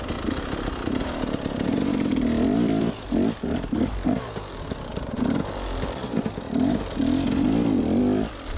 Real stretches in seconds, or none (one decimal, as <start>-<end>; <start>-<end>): 0.0-8.6